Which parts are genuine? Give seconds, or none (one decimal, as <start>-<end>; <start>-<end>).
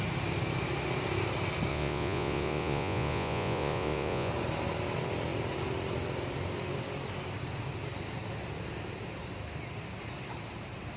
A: 0.0-1.7; 4.3-11.0